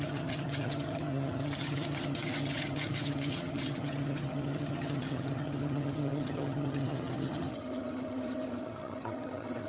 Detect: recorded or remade remade